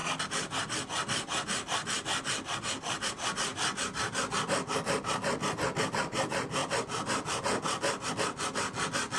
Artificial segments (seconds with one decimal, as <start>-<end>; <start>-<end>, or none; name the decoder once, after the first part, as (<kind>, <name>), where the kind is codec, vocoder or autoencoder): none

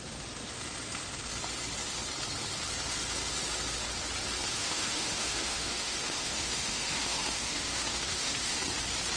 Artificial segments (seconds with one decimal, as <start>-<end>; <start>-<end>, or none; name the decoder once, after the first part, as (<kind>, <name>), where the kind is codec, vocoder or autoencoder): 4.6-8.6 (autoencoder, DAC-VAE)

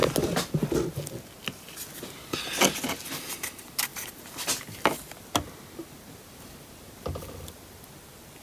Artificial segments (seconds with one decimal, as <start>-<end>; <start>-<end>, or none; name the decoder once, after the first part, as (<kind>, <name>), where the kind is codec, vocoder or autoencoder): none

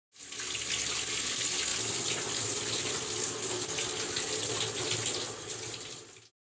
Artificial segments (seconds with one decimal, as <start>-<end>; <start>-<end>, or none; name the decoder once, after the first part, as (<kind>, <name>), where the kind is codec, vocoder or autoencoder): none

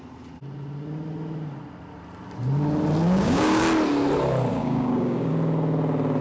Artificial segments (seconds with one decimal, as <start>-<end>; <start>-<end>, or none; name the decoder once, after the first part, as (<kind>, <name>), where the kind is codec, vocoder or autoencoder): 3.0-3.6 (codec, DAC); 4.5-5.3